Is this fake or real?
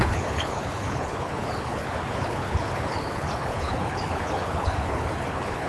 fake